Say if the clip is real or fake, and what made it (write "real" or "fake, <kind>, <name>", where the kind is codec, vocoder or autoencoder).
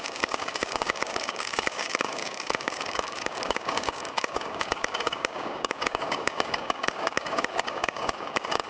fake, codec, DAC